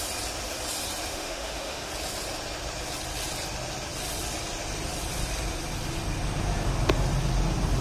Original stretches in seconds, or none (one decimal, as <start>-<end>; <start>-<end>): 0.0-1.1; 1.9-7.8